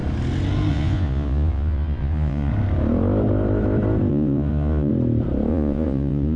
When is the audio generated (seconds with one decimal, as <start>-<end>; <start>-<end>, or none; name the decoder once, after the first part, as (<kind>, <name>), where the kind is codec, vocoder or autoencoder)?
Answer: 0.7-2.5 (vocoder, Vocos); 4.1-4.9; 5.5-6.4